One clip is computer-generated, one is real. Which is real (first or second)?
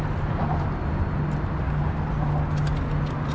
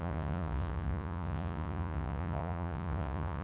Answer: first